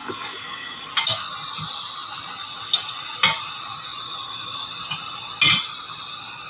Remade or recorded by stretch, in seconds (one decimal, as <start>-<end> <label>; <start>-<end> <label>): 0.0-0.9 remade; 0.9-6.5 recorded